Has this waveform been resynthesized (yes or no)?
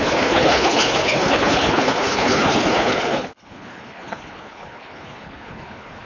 yes